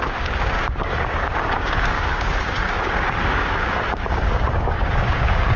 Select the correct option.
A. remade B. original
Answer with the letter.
A